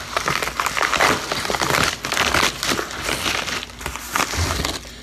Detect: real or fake real